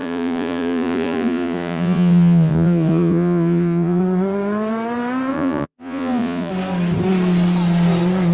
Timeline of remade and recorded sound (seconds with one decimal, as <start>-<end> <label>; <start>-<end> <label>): 0.0-4.0 remade; 4.0-5.3 recorded; 5.3-6.5 remade; 6.5-8.3 recorded